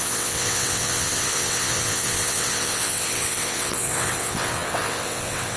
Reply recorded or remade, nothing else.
remade